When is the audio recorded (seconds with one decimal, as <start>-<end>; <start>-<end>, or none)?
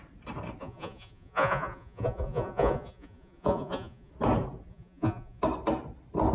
0.0-0.6; 4.1-4.7; 5.4-6.3